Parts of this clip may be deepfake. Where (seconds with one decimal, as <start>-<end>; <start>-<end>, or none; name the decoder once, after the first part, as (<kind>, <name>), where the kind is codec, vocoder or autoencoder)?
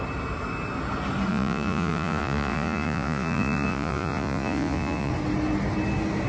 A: 1.3-5.1 (vocoder, Vocos)